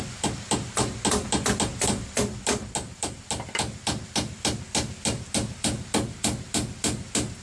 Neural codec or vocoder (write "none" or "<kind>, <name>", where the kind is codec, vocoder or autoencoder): none